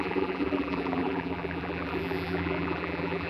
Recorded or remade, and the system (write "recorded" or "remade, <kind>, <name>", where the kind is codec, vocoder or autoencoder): remade, vocoder, BigVGAN v2